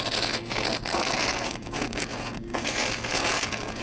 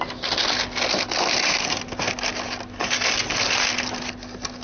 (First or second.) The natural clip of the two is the second